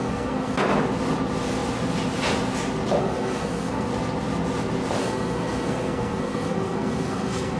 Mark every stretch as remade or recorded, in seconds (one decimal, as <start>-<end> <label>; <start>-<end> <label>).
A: 0.0-0.6 remade; 0.6-3.0 recorded; 3.0-3.9 remade; 3.9-5.0 recorded; 5.0-7.6 remade